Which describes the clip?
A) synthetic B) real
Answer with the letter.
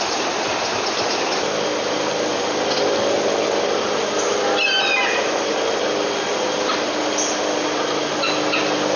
B